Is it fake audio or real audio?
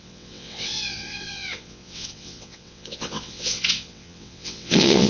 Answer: fake